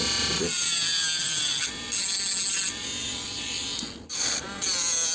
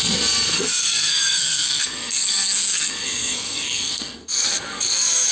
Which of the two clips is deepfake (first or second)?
second